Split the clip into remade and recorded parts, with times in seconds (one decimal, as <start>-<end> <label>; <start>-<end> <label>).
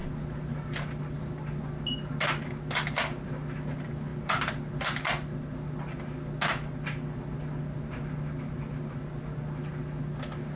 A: 0.0-10.6 recorded